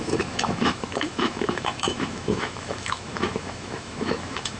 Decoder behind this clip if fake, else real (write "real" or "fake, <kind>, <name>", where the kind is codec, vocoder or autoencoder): fake, autoencoder, DAC-VAE